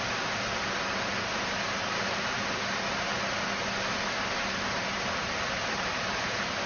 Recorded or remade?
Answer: recorded